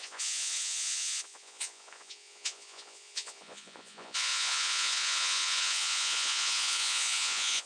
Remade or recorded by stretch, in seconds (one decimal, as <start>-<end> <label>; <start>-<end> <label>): 0.0-7.7 remade